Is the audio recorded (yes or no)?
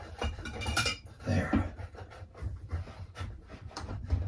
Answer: no